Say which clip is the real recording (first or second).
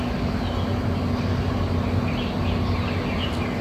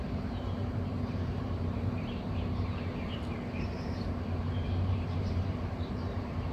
first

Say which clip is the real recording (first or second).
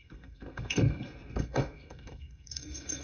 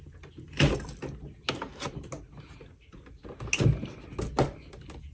second